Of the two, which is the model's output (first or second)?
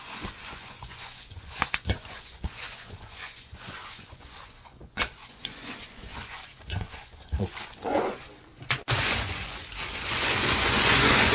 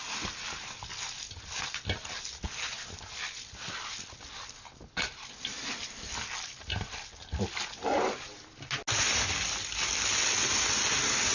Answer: first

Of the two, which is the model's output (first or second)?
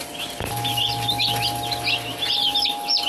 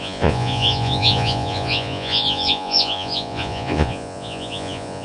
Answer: second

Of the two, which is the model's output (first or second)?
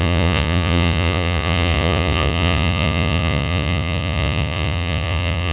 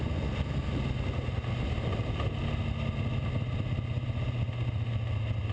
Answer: first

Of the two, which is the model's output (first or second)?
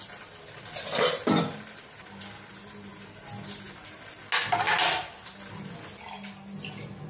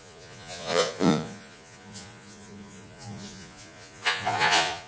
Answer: second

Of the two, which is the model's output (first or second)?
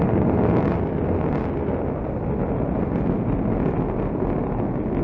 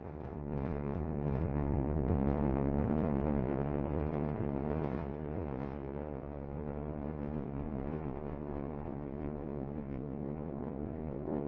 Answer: second